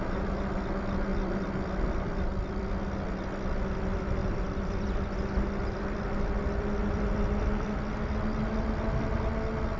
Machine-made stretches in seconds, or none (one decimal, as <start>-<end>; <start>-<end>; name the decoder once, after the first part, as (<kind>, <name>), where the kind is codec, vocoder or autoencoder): 1.1-2.7 (vocoder, BigVGAN v2); 4.2-7.4